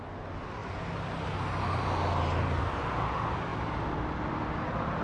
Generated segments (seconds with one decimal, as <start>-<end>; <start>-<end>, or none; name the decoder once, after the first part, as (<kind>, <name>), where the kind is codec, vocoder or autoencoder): none